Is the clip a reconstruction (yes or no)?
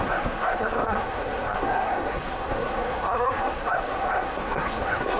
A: yes